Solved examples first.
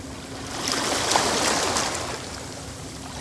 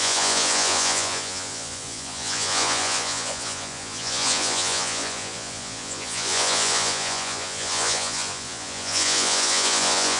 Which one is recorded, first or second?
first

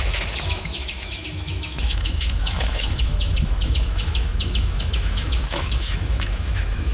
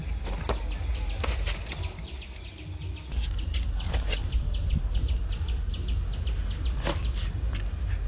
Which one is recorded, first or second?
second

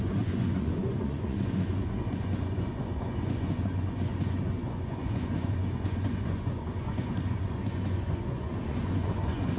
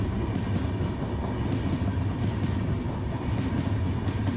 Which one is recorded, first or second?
second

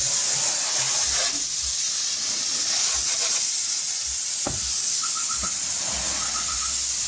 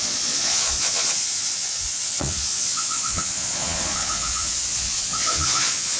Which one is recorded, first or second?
first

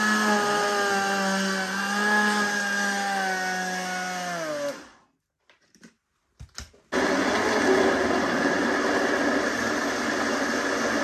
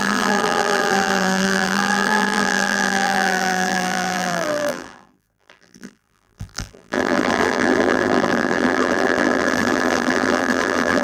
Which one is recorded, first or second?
first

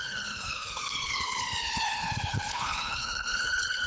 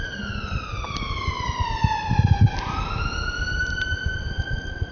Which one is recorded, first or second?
second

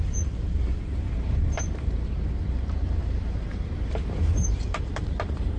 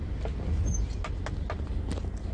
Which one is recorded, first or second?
second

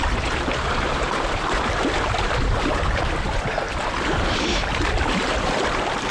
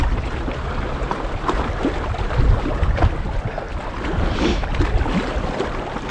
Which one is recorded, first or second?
second